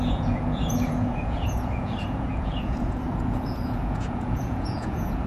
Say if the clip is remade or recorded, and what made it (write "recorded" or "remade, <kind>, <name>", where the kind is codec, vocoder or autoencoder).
remade, vocoder, Vocos